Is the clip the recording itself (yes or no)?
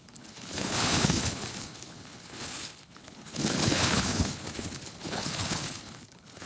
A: no